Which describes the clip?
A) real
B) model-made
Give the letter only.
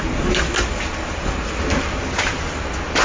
A